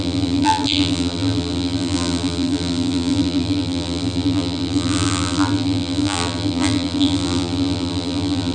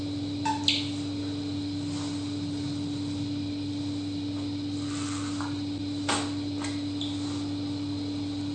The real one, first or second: second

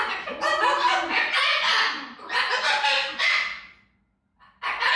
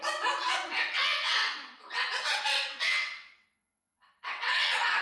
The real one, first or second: first